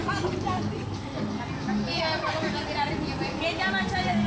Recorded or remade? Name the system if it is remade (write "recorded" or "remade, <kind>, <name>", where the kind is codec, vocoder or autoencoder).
recorded